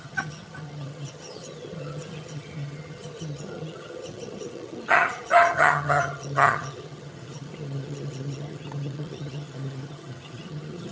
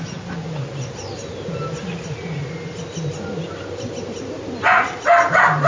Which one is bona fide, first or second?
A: second